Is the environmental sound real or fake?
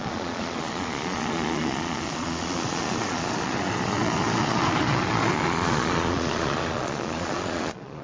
fake